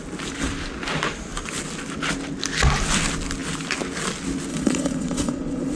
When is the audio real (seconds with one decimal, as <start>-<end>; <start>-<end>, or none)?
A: 0.0-4.5